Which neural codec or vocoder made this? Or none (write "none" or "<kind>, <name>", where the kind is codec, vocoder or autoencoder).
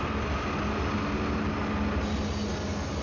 none